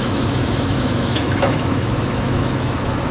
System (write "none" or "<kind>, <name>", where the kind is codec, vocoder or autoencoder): autoencoder, DAC-VAE